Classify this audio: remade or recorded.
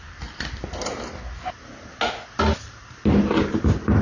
recorded